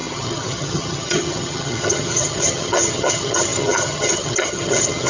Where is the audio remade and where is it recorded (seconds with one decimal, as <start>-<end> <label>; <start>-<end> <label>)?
0.0-5.1 remade